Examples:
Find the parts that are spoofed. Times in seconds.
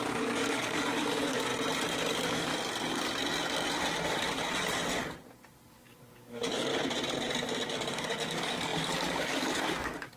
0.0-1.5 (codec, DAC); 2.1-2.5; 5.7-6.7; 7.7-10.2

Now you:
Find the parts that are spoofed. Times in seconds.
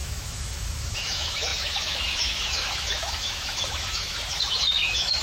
0.0-5.2 (autoencoder, DAC-VAE)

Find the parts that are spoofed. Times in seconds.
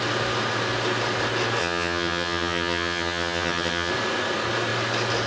1.6-3.9 (vocoder, HiFi-GAN)